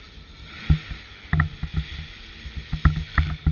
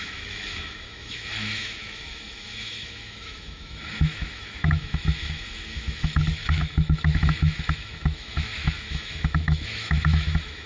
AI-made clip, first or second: second